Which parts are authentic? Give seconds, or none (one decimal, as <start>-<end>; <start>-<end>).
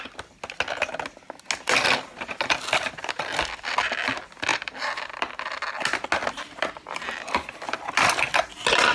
0.0-8.9